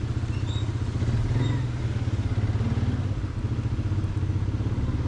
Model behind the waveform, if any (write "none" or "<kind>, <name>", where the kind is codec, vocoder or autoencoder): none